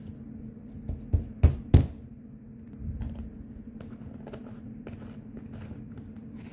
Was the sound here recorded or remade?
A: recorded